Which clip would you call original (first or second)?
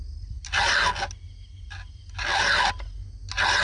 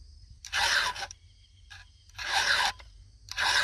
first